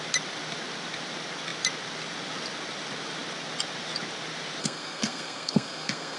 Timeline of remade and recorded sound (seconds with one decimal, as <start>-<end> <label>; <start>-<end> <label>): 0.0-4.6 recorded; 4.6-6.2 remade